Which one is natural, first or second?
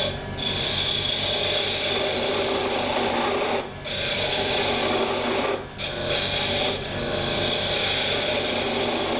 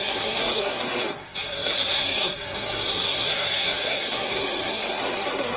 first